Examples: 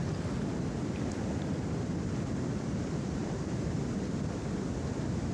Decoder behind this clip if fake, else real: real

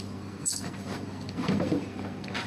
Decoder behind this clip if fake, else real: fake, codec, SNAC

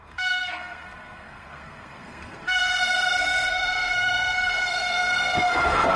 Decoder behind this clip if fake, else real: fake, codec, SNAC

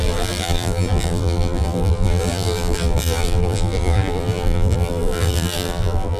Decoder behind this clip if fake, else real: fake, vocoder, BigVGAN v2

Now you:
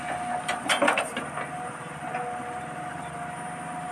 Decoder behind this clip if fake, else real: real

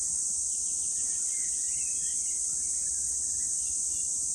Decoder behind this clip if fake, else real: fake, vocoder, BigVGAN v2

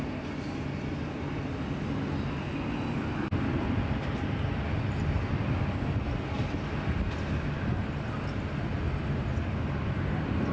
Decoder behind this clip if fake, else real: real